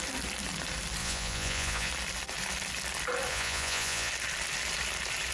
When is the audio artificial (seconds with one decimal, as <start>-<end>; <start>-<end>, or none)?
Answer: 1.0-1.9; 3.3-4.1